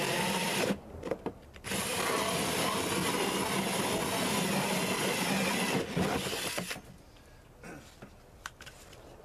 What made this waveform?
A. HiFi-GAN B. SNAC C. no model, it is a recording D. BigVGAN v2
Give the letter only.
C